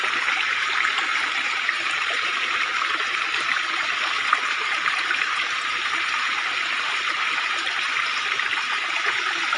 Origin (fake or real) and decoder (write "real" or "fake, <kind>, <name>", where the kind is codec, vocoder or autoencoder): fake, vocoder, BigVGAN v2